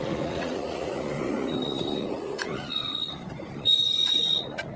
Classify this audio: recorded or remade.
remade